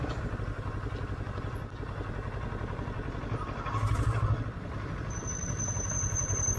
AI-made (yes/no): no